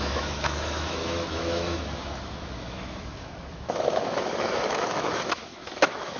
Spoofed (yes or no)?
yes